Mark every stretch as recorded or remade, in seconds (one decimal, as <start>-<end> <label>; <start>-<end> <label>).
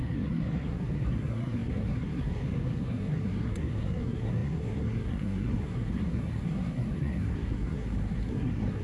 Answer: 0.0-8.8 remade